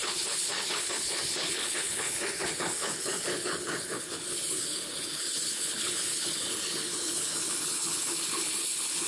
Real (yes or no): no